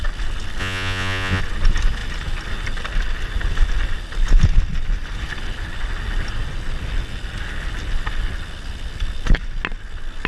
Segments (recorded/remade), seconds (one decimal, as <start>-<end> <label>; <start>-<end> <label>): 0.0-0.6 recorded; 0.6-1.4 remade; 1.4-10.3 recorded